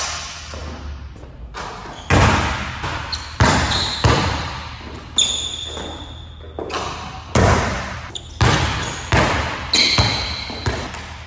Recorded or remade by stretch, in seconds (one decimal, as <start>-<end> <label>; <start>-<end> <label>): 0.0-11.3 recorded